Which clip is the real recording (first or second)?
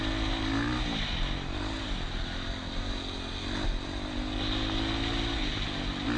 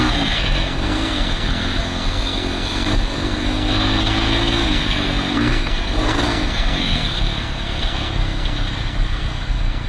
first